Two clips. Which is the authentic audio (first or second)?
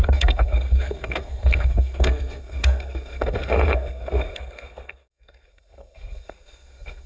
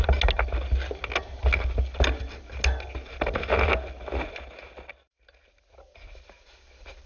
second